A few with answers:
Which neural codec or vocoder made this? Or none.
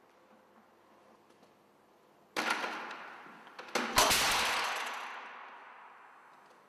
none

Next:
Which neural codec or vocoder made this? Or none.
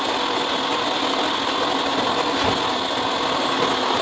none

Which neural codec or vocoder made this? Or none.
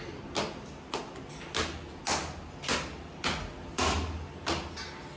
none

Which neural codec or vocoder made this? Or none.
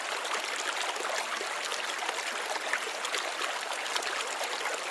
none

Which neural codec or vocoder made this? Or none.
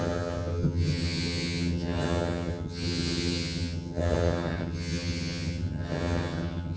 vocoder, HiFi-GAN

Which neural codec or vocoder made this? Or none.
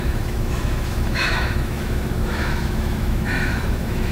autoencoder, DAC-VAE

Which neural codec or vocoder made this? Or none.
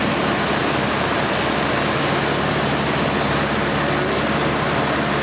none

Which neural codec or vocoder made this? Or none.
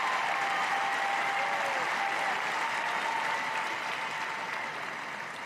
none